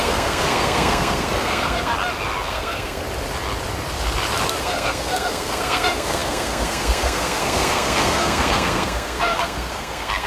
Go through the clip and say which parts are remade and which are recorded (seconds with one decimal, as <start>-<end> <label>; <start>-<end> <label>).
0.0-1.9 remade; 1.9-2.5 recorded; 2.5-3.0 remade; 3.0-4.6 recorded; 4.6-10.3 remade